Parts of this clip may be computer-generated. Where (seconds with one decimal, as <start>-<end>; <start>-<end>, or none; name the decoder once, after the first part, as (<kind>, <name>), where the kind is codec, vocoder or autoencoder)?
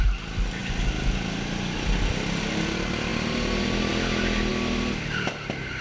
none